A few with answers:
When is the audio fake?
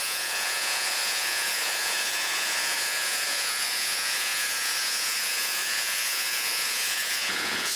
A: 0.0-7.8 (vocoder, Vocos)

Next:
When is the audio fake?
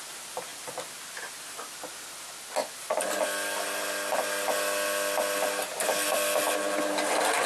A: none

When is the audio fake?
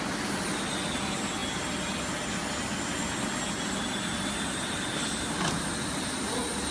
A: none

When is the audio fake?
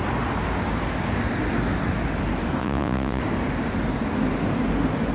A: 2.6-3.2 (vocoder, Vocos)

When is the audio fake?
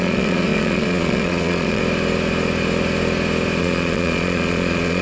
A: 0.0-1.8 (vocoder, Vocos); 3.6-5.0